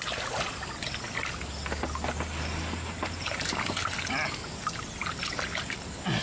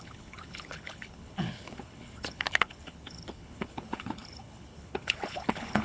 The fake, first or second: second